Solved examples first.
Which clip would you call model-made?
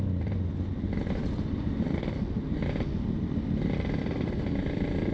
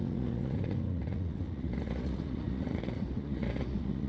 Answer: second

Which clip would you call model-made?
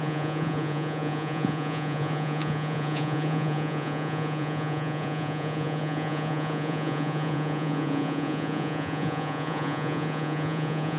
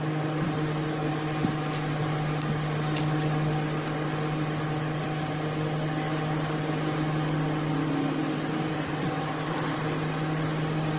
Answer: first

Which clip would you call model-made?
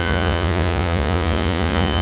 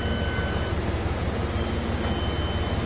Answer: first